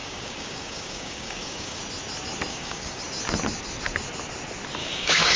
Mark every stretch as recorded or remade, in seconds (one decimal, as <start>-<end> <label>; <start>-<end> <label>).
0.0-1.8 remade; 1.8-2.5 recorded; 2.5-3.0 remade; 3.0-4.8 recorded; 4.8-5.4 remade